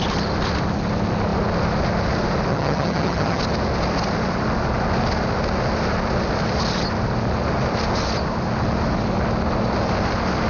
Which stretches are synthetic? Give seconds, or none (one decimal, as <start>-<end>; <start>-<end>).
2.5-3.4